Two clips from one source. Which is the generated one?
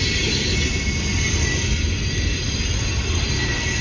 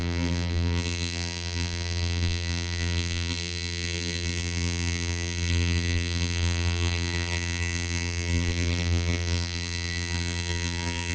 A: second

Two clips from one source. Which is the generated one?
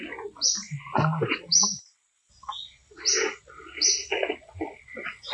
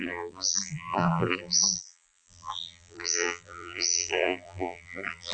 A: second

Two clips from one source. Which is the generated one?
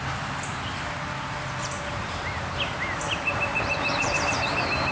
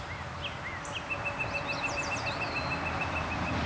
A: first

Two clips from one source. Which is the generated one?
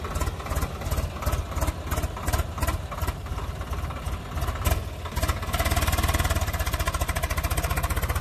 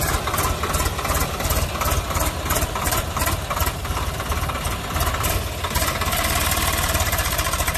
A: second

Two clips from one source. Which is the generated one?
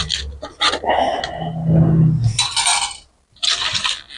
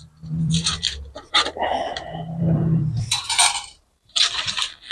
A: second